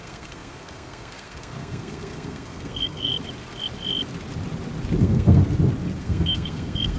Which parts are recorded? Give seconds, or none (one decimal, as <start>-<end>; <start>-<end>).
3.1-5.0; 5.4-6.0